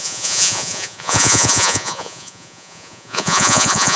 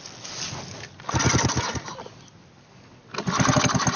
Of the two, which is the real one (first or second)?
second